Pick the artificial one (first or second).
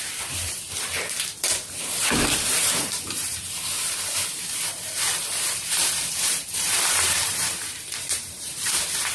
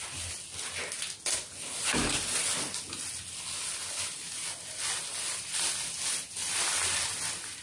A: first